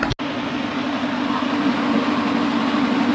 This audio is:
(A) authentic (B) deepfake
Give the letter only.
A